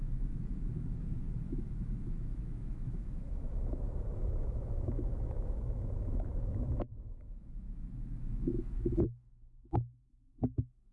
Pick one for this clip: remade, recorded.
remade